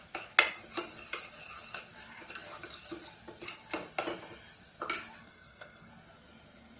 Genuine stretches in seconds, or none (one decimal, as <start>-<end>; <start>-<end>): 0.0-5.2; 5.9-6.8